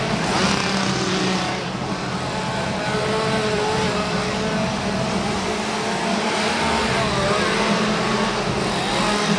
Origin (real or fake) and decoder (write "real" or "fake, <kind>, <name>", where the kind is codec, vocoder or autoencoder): real